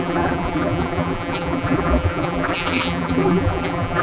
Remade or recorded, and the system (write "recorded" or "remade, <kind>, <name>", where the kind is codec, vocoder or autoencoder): remade, vocoder, BigVGAN v2